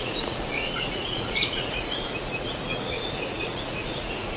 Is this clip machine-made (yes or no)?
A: yes